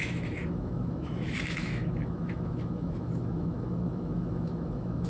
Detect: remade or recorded remade